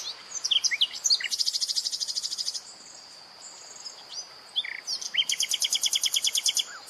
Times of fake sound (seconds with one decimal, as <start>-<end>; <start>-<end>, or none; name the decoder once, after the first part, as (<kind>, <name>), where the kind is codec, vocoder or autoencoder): none